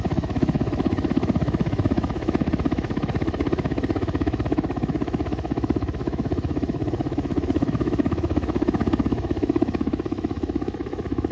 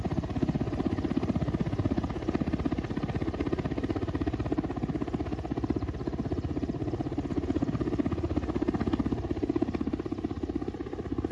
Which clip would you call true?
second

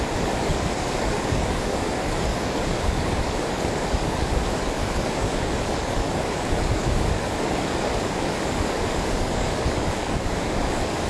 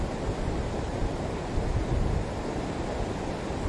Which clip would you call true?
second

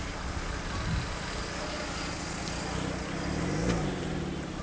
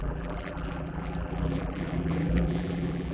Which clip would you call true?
first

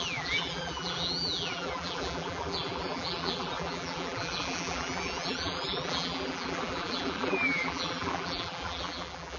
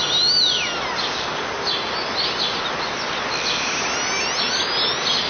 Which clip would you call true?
second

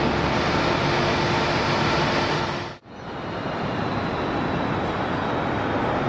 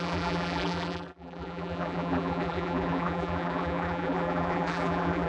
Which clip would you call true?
first